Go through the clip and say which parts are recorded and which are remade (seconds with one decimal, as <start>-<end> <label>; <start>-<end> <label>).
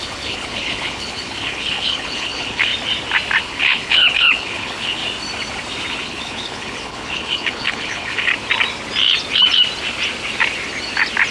0.0-2.7 remade; 2.7-3.4 recorded; 3.4-5.0 remade; 5.0-5.9 recorded; 5.9-8.3 remade; 8.3-11.3 recorded